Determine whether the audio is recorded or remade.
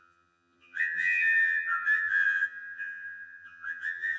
remade